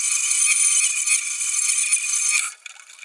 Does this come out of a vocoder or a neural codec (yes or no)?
no